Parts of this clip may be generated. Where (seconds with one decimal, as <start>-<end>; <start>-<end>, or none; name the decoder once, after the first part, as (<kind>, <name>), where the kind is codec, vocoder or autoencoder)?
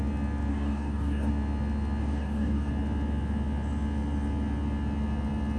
0.5-1.3 (codec, DAC); 2.0-2.7